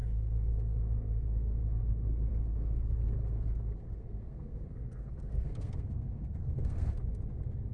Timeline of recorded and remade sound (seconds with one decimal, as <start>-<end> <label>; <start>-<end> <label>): 0.0-1.8 remade; 1.8-2.3 recorded; 2.3-6.9 remade; 6.9-7.7 recorded